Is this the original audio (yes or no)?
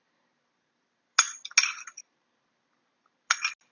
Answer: yes